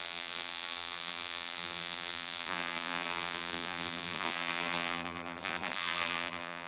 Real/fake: fake